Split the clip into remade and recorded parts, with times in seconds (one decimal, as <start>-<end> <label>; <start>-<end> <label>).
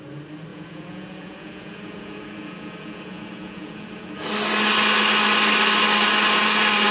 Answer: 0.0-0.5 recorded; 0.5-4.3 remade; 4.3-6.9 recorded